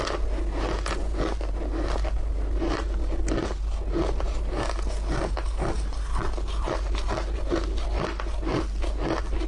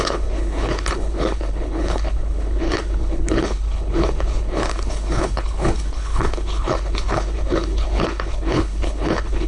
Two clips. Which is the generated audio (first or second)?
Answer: second